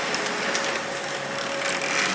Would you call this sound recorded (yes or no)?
yes